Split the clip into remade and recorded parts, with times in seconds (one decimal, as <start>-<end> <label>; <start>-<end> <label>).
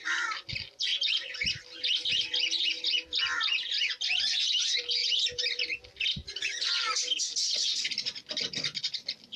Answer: 0.0-9.4 recorded